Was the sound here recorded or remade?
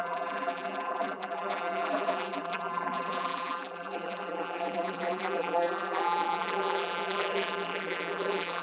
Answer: remade